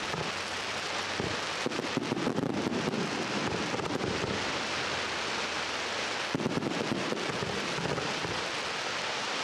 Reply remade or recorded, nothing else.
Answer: remade